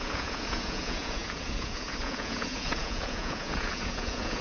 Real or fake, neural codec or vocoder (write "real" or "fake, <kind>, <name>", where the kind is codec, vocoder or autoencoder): fake, vocoder, Vocos